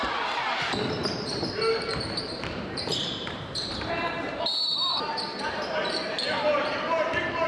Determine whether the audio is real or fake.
fake